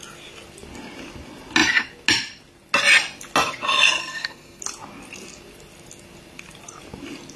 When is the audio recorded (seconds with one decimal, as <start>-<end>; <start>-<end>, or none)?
0.0-4.0; 4.6-7.4